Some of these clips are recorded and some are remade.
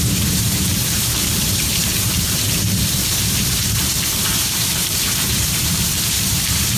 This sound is remade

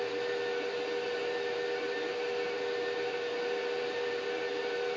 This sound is recorded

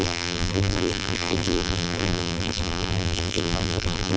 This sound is remade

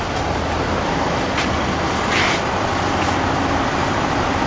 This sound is remade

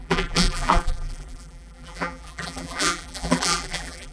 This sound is remade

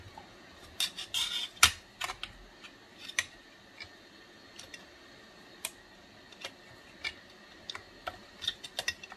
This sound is recorded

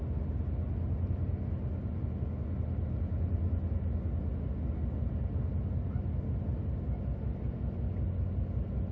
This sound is recorded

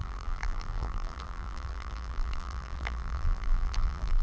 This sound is remade